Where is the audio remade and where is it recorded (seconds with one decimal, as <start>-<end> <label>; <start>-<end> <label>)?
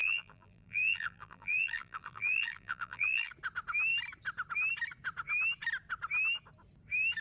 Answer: 0.0-3.3 remade; 3.3-7.2 recorded